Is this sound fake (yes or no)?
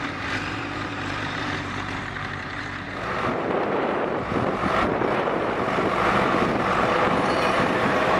yes